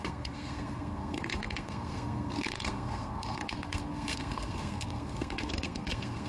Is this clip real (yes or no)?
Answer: no